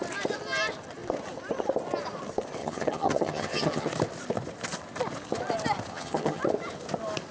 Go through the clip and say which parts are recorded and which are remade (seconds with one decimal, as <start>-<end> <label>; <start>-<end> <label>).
0.0-2.6 recorded; 2.6-3.9 remade; 3.9-5.9 recorded; 5.9-6.4 remade; 6.4-7.3 recorded